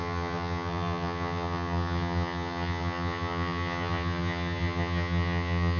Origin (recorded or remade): remade